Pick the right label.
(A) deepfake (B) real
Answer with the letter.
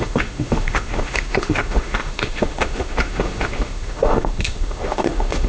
A